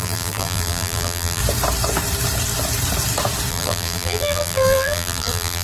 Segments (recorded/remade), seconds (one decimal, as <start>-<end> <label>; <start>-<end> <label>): 0.0-1.4 remade; 1.4-3.5 recorded; 3.5-5.6 remade

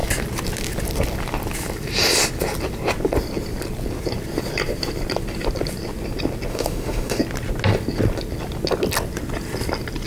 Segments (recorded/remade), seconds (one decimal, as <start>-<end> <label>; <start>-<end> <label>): 0.0-6.5 recorded; 6.5-7.2 remade; 7.2-10.1 recorded

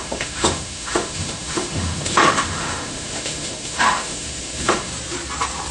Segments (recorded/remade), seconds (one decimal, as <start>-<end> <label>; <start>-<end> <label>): 0.0-4.9 remade; 4.9-5.7 recorded

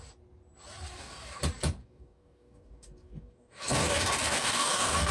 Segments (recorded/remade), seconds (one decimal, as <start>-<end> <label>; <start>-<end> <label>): 0.0-0.9 recorded; 0.9-1.4 remade; 1.4-1.8 recorded; 1.8-5.1 remade

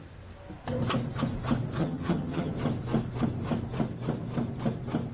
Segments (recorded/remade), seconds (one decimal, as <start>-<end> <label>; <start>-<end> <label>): 0.0-1.8 recorded; 1.8-2.5 remade; 2.5-5.1 recorded

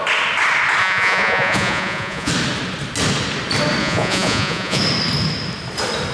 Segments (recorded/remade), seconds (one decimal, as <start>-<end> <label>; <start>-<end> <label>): 0.0-0.8 recorded; 0.8-2.3 remade; 2.3-3.8 recorded; 3.8-4.8 remade; 4.8-6.1 recorded

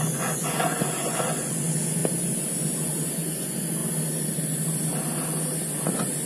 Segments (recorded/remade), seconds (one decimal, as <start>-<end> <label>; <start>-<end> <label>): 0.0-2.0 remade; 2.0-3.1 recorded; 3.1-3.8 remade; 3.8-6.3 recorded

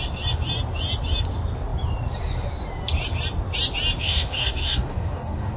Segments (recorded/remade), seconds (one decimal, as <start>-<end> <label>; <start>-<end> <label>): 0.0-4.0 recorded; 4.0-5.6 remade